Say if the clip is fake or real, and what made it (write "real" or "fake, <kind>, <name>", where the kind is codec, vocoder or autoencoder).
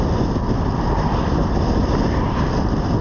real